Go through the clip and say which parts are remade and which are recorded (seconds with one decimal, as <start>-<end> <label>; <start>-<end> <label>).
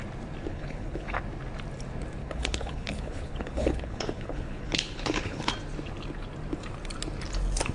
0.0-0.5 recorded; 0.5-1.2 remade; 1.2-2.2 recorded; 2.2-5.5 remade; 5.5-7.7 recorded